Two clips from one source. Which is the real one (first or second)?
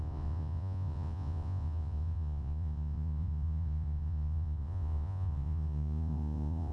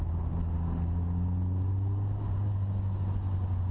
second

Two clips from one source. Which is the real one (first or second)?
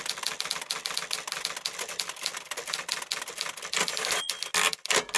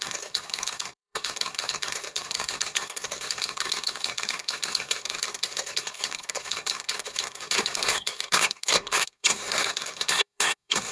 first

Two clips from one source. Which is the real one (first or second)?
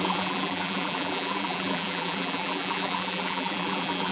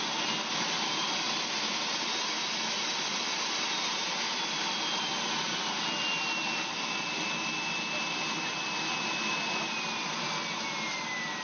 second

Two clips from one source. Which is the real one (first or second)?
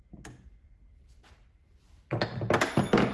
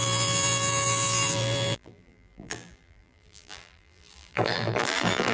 first